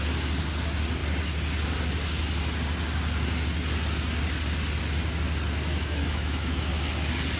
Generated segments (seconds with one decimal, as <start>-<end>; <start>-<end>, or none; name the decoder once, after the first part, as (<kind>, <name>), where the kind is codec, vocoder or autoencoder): 5.7-6.7 (autoencoder, DAC-VAE)